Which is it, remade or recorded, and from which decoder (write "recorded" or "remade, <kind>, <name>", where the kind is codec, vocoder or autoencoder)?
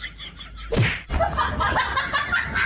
recorded